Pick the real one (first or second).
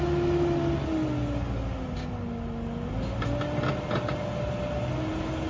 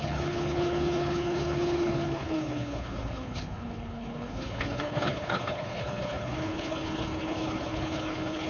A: first